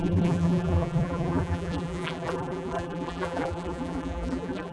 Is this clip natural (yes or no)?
no